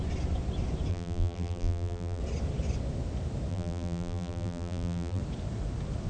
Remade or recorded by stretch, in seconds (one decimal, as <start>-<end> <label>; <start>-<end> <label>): 0.0-0.9 recorded; 0.9-2.2 remade; 2.2-3.5 recorded; 3.5-5.2 remade; 5.2-6.1 recorded